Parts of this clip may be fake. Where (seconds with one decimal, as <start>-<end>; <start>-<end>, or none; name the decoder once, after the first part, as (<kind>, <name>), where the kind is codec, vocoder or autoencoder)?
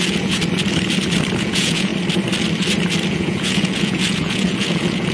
0.0-0.4 (vocoder, Vocos); 1.4-1.9; 3.1-5.1